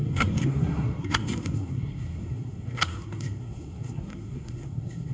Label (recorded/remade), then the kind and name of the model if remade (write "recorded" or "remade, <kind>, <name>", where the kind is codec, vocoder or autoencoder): remade, codec, SNAC